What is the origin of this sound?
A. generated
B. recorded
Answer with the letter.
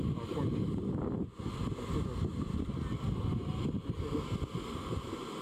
B